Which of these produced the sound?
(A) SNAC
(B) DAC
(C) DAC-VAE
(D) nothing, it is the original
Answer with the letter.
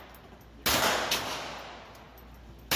D